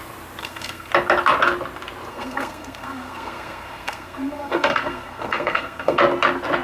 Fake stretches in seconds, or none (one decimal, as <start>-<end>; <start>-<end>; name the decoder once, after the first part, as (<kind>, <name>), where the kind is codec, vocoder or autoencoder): 0.4-0.9 (codec, SNAC); 2.1-6.0